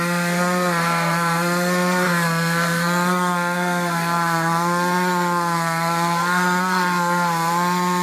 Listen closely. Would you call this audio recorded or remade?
remade